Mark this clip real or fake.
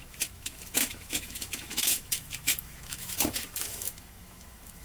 fake